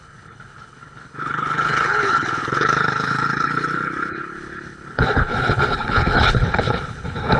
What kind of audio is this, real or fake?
fake